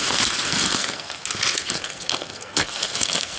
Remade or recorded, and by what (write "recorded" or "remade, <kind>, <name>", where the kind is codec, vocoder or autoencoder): remade, codec, SNAC